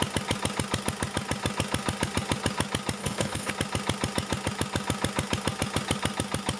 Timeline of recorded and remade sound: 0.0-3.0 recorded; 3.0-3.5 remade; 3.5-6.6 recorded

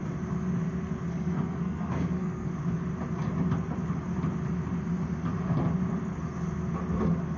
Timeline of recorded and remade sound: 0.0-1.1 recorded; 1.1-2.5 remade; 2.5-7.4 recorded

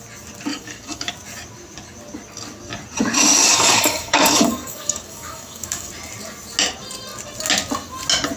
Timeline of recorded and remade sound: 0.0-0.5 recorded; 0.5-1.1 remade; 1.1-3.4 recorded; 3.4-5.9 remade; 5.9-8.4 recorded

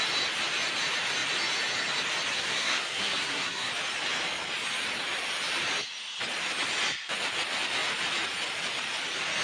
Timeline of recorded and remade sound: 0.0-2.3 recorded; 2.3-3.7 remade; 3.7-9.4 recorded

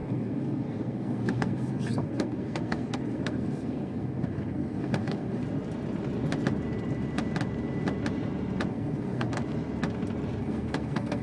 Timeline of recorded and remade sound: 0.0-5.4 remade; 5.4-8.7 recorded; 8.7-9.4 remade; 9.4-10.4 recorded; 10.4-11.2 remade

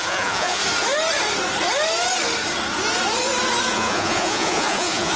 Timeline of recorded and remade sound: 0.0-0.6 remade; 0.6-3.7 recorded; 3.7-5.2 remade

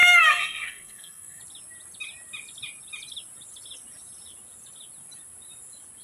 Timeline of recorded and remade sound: 0.0-1.4 remade; 1.4-6.0 recorded

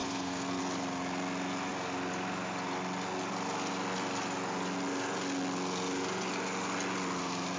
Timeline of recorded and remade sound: 0.0-0.6 remade; 0.6-7.6 recorded